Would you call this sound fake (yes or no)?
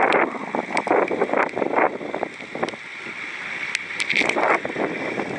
no